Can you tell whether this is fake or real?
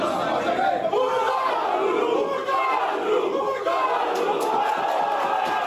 real